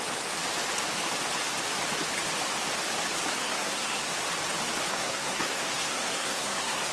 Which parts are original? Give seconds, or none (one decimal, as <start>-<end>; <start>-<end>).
0.0-3.4; 4.1-4.9